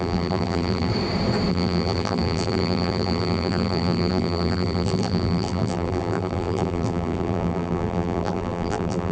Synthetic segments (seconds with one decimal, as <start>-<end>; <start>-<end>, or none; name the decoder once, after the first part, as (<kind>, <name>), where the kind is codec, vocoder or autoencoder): 0.0-0.9 (vocoder, BigVGAN v2); 1.5-9.1